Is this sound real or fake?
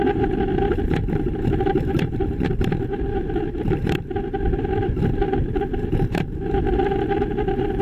fake